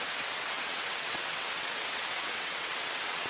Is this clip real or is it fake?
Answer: fake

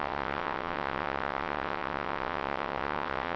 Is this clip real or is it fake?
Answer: fake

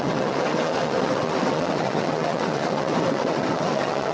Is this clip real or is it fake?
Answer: fake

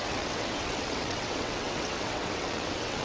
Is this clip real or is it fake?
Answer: fake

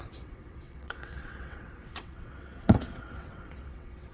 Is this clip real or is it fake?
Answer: fake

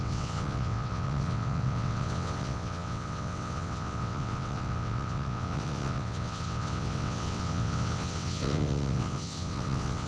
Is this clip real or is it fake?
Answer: fake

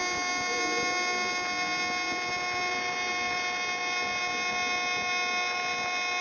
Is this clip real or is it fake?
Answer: real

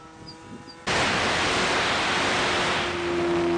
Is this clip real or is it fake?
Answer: real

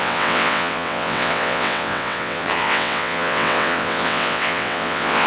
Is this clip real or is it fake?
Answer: fake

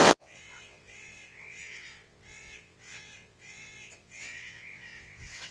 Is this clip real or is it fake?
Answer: fake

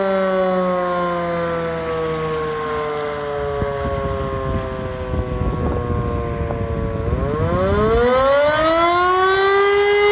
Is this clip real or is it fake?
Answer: real